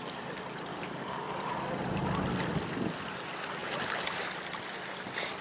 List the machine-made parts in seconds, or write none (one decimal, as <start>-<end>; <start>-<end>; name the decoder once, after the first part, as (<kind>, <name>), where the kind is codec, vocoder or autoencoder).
0.7-1.5 (codec, DAC)